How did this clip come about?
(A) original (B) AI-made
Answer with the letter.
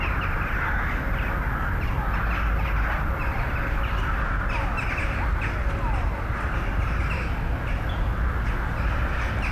A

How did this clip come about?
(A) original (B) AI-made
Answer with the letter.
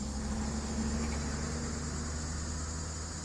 A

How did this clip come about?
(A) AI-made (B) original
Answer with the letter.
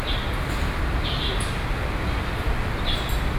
B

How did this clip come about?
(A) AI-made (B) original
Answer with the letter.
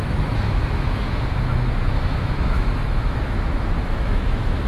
A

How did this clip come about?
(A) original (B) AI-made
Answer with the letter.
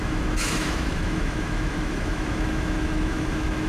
B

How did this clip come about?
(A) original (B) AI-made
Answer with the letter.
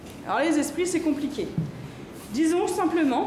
A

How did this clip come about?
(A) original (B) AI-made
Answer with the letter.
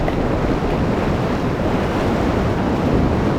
A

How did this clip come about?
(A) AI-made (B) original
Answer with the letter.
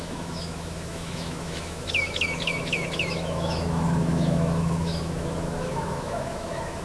A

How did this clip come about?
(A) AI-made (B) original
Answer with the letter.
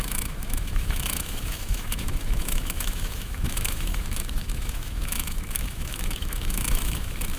A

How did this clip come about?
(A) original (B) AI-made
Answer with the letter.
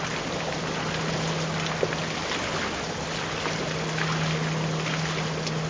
A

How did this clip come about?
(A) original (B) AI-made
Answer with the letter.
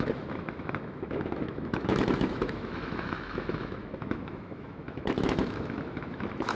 B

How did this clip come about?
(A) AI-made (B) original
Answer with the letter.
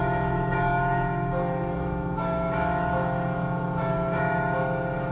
A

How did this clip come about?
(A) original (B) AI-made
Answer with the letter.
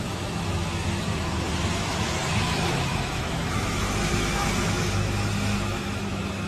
B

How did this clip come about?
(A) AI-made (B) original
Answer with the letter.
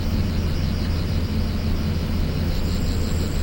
B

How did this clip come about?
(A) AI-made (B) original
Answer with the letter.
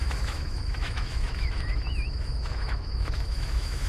A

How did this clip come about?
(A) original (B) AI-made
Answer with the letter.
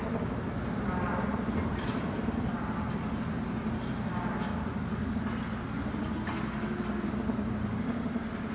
A